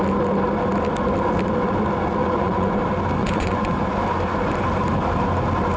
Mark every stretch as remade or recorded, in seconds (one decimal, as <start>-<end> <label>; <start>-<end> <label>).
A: 0.0-2.2 recorded; 2.2-2.8 remade; 2.8-3.2 recorded; 3.2-3.7 remade; 3.7-5.8 recorded